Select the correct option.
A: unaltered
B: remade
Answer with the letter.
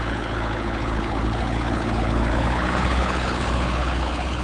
B